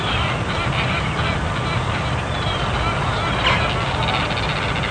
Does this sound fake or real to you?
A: real